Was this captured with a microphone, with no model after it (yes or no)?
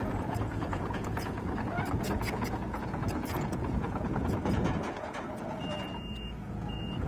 no